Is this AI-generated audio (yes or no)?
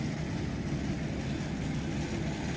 no